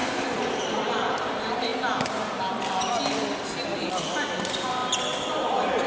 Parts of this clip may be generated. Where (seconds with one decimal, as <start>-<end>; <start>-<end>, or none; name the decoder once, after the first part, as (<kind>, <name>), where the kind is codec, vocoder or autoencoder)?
none